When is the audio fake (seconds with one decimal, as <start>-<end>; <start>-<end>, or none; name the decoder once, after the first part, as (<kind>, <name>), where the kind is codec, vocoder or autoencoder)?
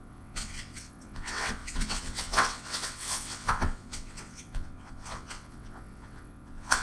0.0-6.8 (vocoder, WaveNeXt)